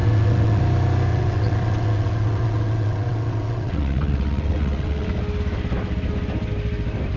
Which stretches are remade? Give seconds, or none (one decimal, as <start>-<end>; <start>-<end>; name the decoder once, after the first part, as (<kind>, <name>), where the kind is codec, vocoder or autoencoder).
0.0-0.6 (vocoder, WaveNeXt); 1.1-5.1